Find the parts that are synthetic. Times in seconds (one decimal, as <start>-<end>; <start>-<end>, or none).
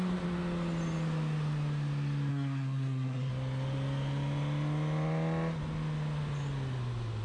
2.3-3.3